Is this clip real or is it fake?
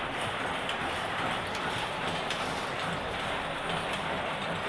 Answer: real